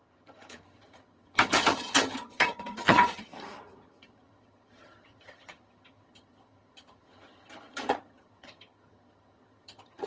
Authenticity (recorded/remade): remade